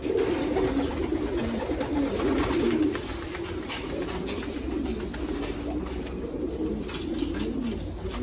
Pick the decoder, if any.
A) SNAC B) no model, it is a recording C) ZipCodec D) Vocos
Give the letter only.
B